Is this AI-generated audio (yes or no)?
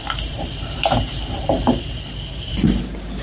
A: yes